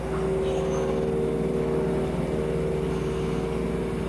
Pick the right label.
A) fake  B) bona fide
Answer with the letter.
B